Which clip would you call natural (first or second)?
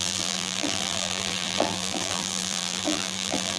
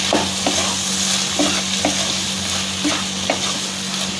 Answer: second